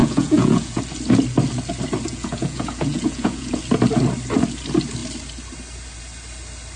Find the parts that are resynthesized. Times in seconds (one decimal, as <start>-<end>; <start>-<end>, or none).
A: 0.0-0.8; 2.1-3.6